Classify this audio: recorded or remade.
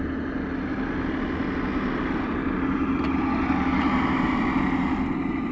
recorded